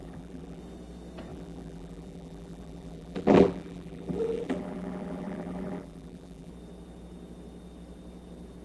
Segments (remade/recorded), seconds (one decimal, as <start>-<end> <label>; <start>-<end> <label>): 0.0-0.6 remade; 0.6-1.3 recorded; 1.3-6.5 remade; 6.5-8.6 recorded